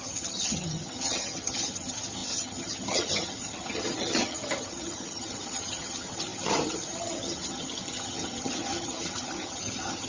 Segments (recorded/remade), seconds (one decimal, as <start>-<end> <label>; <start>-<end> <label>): 0.0-10.1 remade